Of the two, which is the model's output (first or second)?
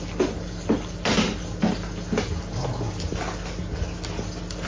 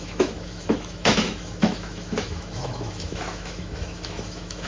second